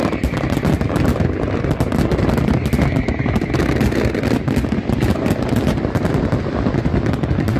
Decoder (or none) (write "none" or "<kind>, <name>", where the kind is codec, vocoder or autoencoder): none